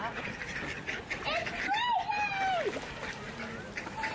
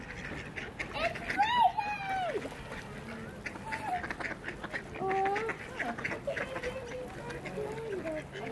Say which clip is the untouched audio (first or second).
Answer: second